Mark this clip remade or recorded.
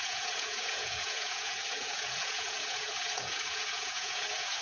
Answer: remade